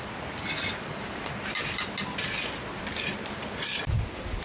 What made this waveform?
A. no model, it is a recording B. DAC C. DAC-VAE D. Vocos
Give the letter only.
A